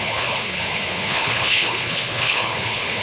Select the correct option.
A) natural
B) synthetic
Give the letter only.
B